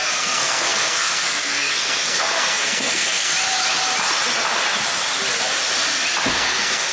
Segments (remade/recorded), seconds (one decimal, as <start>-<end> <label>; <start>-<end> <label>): 0.0-3.3 remade; 3.3-6.3 recorded; 6.3-6.9 remade